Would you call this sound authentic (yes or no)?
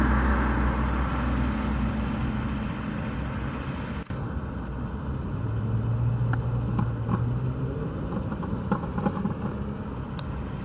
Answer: yes